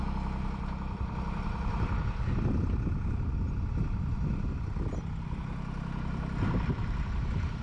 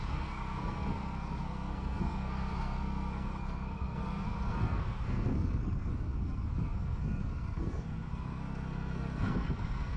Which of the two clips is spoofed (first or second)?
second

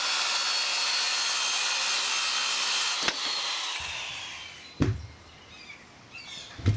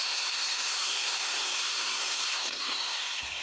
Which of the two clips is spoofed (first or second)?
second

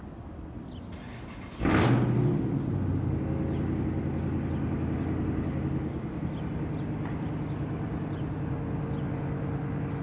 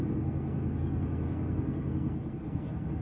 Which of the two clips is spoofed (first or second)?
second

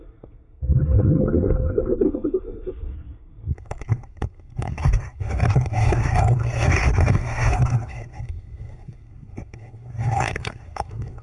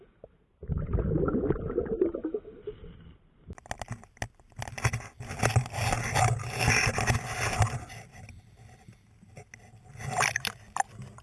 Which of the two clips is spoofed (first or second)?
first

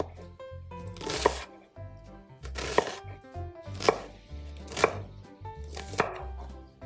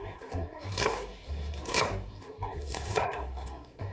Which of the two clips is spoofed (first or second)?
second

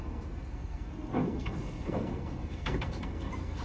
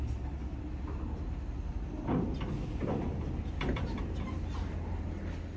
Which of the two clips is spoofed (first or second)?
first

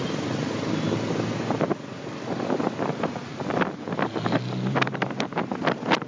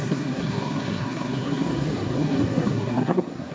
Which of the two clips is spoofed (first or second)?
second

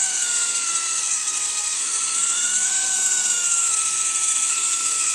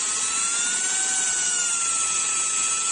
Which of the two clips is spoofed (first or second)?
first